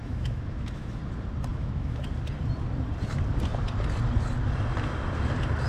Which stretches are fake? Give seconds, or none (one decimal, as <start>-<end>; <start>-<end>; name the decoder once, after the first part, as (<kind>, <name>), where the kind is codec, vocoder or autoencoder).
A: 0.0-1.0 (autoencoder, DAC-VAE); 1.5-2.0

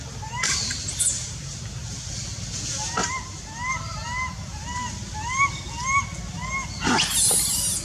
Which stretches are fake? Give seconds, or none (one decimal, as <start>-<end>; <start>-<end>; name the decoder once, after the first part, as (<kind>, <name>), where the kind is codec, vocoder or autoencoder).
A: none

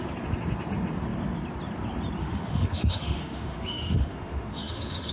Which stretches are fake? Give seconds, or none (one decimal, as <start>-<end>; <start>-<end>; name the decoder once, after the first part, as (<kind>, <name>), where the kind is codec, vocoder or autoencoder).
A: 2.2-5.1 (autoencoder, DAC-VAE)

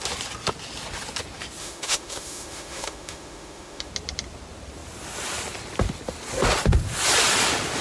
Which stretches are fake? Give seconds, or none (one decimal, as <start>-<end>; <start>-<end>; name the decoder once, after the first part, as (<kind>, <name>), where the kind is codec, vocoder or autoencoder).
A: 1.6-3.9 (autoencoder, DAC-VAE)

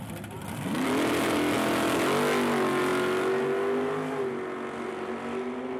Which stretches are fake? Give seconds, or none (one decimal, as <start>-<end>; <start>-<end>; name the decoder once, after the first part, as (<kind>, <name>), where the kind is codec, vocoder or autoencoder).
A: none

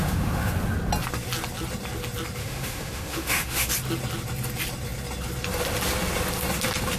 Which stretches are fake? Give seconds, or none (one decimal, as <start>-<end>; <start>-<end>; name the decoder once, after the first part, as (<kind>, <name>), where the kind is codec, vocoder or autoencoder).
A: 0.0-0.5 (autoencoder, DAC-VAE); 2.4-3.7

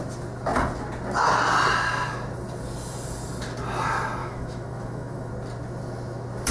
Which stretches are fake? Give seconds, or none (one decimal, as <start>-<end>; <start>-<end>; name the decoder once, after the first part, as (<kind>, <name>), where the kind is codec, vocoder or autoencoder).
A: 4.2-5.3 (autoencoder, DAC-VAE)

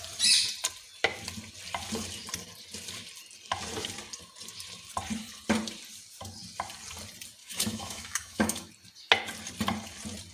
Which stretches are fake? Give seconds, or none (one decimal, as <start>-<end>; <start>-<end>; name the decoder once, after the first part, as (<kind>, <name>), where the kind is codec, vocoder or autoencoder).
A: 7.4-8.7 (autoencoder, DAC-VAE)